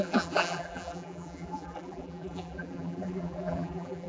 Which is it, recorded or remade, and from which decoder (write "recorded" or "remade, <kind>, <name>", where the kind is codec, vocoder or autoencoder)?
remade, vocoder, BigVGAN v2